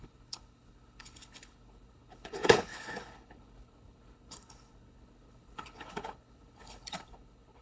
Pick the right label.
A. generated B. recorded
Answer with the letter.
A